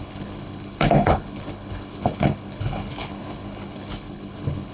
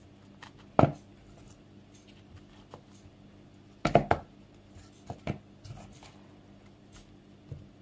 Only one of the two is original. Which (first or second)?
second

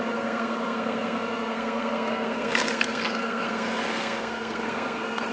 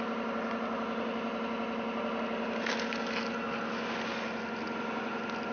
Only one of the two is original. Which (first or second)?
second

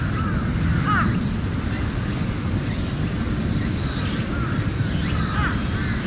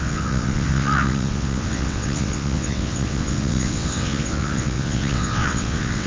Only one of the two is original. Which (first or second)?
first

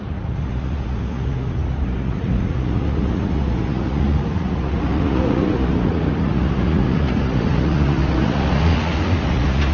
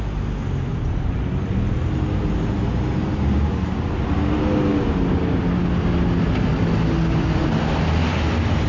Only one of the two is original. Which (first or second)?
second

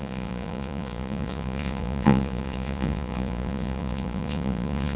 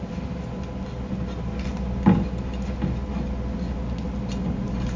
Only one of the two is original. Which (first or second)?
second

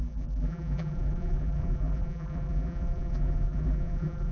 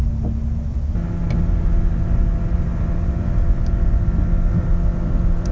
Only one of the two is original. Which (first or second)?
second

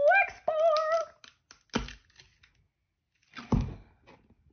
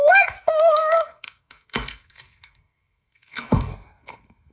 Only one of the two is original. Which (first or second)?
first